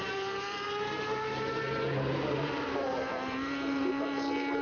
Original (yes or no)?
no